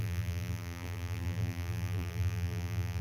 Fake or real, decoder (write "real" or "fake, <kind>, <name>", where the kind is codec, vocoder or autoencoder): fake, vocoder, BigVGAN v2